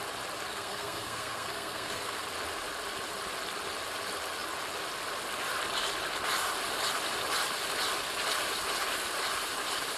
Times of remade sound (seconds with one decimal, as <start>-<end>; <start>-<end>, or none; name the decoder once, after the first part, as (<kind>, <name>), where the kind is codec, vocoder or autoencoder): 0.5-2.2 (codec, SNAC)